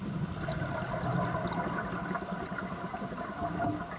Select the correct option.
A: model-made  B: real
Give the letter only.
B